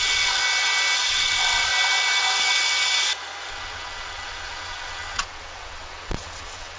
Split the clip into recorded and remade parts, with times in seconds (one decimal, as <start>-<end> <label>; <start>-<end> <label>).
0.0-0.4 remade; 0.4-1.1 recorded; 1.1-1.7 remade; 1.7-3.5 recorded; 3.5-6.8 remade